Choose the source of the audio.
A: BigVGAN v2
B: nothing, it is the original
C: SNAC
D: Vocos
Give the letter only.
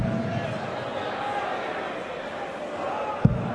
B